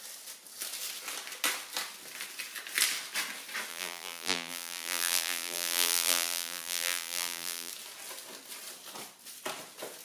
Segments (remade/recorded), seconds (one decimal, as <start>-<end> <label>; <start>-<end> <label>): 0.0-3.7 recorded; 3.7-7.7 remade; 7.7-10.0 recorded